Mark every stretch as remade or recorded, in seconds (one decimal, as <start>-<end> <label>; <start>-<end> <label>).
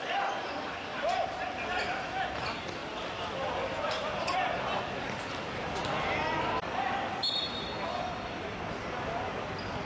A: 0.0-9.9 recorded